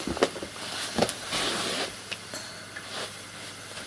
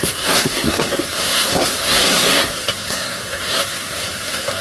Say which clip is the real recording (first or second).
first